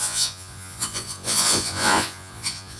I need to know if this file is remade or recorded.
remade